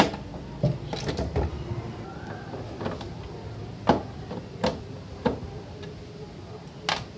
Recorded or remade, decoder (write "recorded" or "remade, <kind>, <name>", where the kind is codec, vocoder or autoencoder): recorded